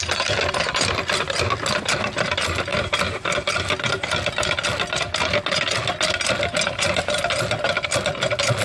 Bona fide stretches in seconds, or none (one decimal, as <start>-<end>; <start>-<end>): 0.0-8.6